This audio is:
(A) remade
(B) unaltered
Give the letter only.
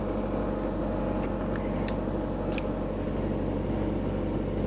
B